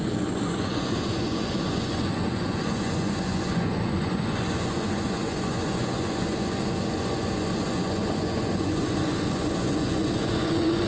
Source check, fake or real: fake